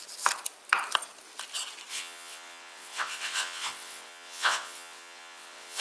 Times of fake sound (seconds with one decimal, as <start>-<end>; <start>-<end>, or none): 1.9-5.8